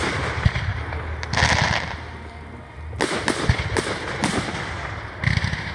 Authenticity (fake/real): real